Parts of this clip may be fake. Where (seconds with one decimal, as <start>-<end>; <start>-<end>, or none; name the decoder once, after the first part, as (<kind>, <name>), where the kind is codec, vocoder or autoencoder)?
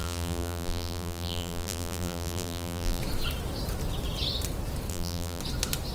0.0-3.0 (vocoder, BigVGAN v2); 4.9-5.4